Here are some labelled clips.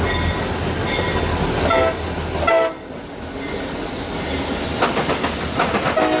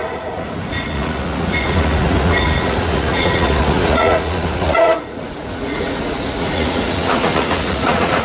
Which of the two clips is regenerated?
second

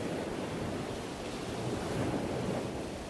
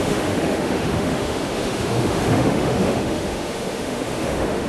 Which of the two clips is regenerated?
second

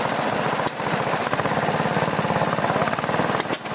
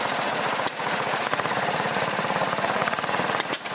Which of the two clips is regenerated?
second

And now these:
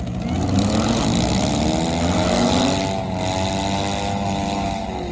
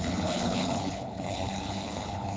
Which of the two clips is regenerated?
second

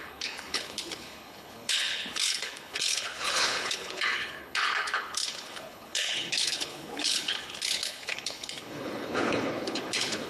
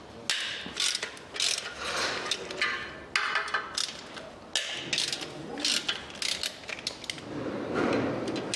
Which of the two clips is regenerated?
first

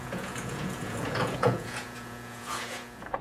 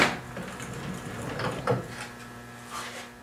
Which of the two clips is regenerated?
first